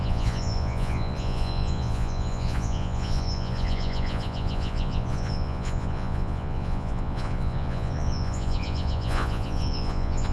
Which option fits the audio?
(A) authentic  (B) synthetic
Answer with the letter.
B